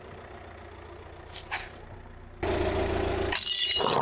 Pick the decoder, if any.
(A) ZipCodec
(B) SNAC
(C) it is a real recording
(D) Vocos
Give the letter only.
C